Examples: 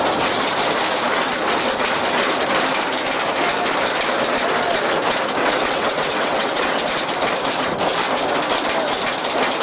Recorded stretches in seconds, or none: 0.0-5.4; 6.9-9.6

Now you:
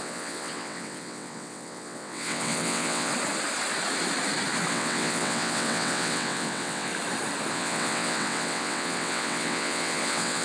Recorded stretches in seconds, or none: 3.1-4.7; 6.9-7.5

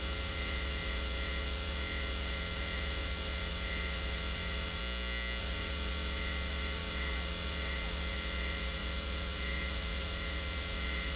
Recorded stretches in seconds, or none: 4.8-5.4

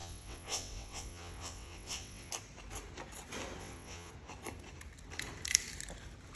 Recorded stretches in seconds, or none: 2.3-3.6; 4.1-6.4